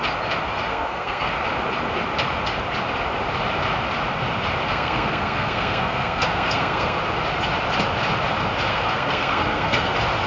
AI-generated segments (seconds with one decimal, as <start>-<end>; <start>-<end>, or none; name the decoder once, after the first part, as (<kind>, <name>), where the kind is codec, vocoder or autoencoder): 0.7-1.3 (codec, SNAC); 4.7-7.0; 8.7-9.9